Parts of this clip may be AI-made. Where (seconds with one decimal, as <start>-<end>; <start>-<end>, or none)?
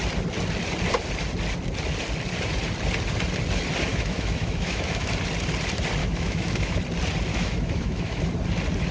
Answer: 3.9-5.1; 6.0-6.8; 7.3-8.2